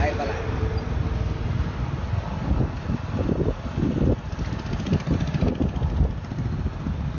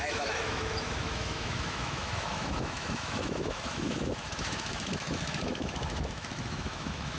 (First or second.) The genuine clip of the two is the first